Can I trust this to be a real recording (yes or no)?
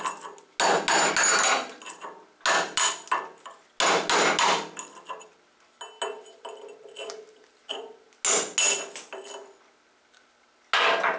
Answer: yes